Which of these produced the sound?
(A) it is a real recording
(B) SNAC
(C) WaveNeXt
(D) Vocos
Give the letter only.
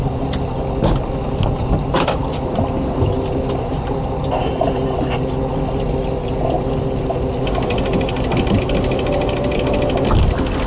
A